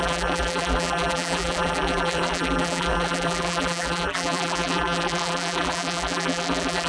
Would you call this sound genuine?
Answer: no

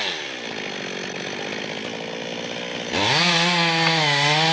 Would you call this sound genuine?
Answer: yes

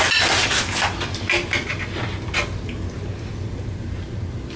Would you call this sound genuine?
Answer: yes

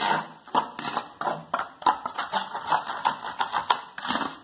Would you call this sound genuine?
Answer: yes